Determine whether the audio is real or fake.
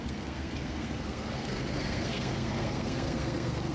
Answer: fake